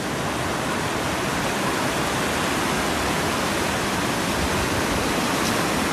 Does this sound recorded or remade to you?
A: recorded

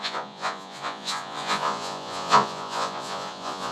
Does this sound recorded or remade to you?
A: remade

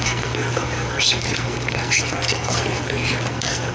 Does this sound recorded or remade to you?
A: remade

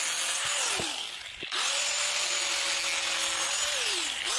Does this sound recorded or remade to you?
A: recorded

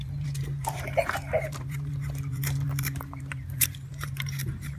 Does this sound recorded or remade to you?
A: remade